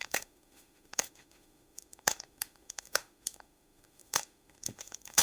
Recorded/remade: remade